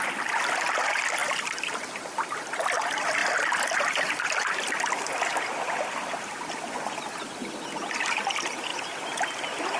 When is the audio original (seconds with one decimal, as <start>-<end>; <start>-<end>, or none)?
0.0-9.8